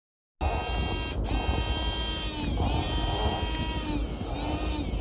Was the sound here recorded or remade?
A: recorded